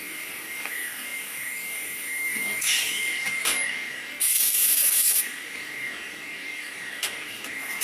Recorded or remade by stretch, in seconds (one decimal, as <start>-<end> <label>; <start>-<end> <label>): 0.0-7.8 remade

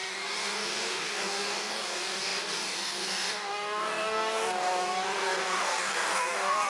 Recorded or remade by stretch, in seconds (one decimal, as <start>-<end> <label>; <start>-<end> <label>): 0.0-6.7 remade